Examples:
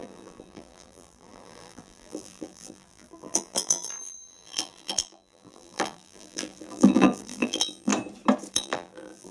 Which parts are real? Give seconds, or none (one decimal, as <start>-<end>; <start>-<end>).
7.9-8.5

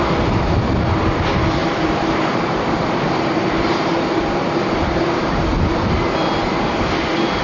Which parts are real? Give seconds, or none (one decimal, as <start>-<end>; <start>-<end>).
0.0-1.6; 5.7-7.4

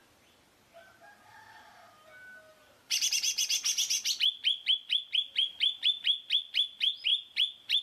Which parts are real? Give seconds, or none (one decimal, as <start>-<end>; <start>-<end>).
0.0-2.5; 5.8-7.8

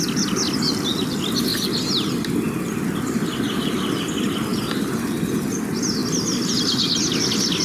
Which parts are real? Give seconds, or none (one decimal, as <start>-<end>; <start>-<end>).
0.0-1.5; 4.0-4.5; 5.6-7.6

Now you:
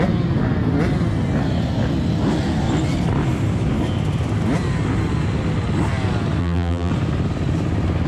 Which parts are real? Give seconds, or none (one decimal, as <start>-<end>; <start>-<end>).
0.0-6.4; 6.9-8.1

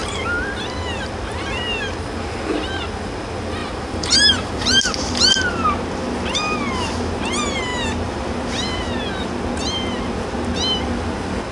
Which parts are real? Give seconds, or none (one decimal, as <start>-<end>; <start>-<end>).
0.0-3.6; 5.1-11.5

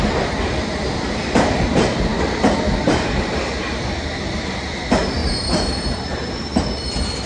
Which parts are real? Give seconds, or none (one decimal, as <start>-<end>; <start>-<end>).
0.0-5.2

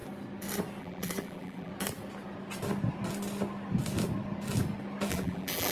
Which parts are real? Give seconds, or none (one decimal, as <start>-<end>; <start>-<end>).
0.0-0.8; 1.7-5.1